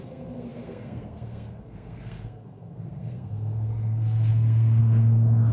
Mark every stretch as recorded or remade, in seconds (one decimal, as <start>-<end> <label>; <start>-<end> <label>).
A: 0.0-5.5 remade